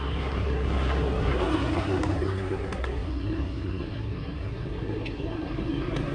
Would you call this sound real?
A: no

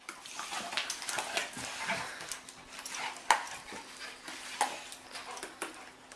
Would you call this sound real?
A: yes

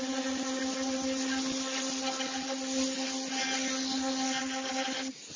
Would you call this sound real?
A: yes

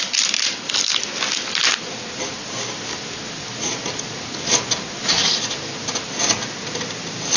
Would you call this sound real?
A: yes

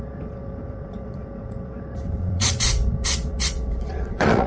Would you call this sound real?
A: no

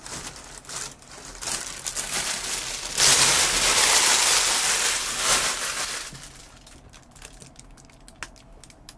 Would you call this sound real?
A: yes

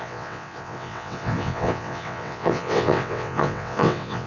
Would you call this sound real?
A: no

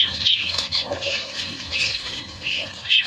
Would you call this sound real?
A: no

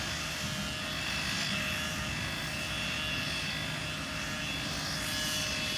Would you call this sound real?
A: yes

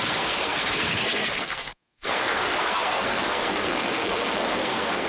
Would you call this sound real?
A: no